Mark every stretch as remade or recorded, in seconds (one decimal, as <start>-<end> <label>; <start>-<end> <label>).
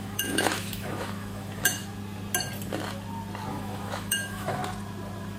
0.0-1.8 remade; 1.8-3.5 recorded; 3.5-4.6 remade; 4.6-5.4 recorded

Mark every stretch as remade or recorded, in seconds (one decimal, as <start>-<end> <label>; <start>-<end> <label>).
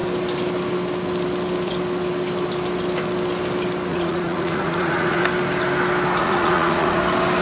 0.0-3.9 recorded; 3.9-5.2 remade; 5.2-6.2 recorded; 6.2-7.0 remade; 7.0-7.4 recorded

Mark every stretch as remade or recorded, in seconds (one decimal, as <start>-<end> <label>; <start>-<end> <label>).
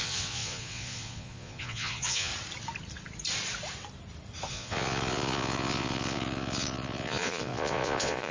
0.0-2.3 remade; 2.3-4.5 recorded; 4.5-8.3 remade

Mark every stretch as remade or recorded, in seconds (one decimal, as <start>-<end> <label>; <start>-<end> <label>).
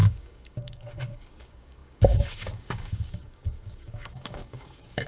0.0-5.1 remade